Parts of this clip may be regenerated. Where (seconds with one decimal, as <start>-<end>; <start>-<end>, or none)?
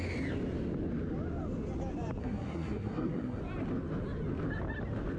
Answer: 2.2-3.4